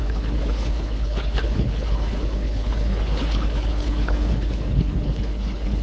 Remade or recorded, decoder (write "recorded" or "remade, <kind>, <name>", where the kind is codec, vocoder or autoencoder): remade, codec, HILCodec